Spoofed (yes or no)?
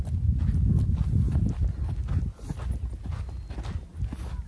no